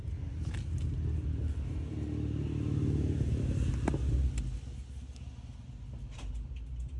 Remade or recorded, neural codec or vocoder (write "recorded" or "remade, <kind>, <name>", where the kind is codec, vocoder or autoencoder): recorded